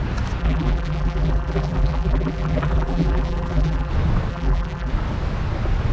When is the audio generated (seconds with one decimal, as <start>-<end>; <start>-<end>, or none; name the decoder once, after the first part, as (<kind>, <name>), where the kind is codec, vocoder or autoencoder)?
0.4-3.9 (vocoder, BigVGAN v2); 4.3-4.9